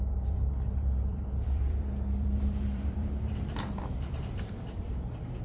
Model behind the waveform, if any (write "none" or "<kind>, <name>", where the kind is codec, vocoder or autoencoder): vocoder, BigVGAN v2